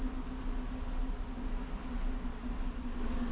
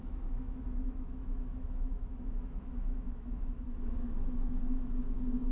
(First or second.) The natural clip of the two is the first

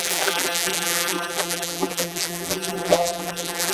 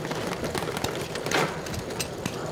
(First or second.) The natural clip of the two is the second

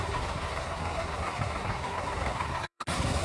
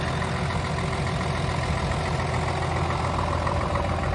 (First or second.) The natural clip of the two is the second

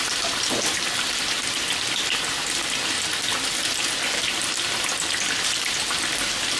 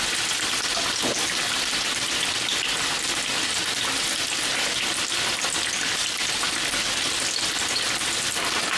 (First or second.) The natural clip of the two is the second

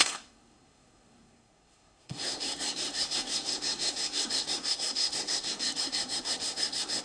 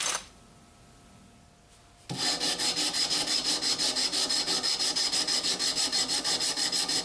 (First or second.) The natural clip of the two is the second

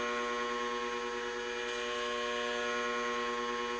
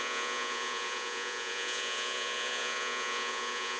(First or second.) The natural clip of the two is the first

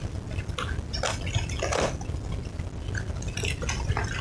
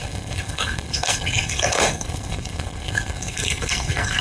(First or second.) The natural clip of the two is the first